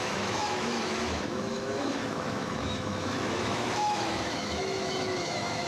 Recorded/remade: remade